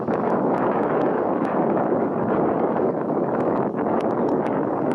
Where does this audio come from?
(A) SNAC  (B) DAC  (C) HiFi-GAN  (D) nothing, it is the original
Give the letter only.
B